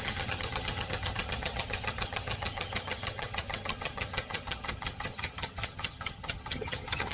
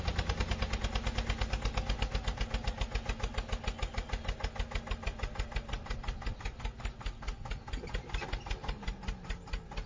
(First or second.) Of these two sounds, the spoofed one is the first